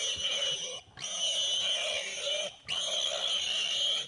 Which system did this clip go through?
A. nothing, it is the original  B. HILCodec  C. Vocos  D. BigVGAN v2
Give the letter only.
A